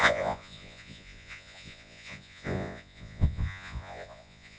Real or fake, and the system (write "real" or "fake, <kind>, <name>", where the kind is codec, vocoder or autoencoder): fake, vocoder, Vocos